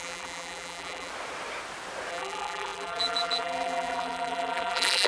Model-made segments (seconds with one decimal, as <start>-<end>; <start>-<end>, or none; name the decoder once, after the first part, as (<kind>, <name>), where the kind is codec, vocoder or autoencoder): 0.0-1.1 (vocoder, BigVGAN v2); 2.1-5.1